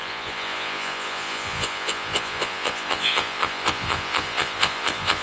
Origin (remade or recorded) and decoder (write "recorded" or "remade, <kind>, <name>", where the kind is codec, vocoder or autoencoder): remade, vocoder, Vocos